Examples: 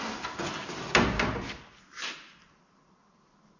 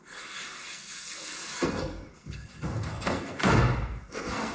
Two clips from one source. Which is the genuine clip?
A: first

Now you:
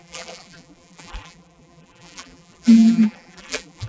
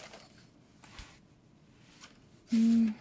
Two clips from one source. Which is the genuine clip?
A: second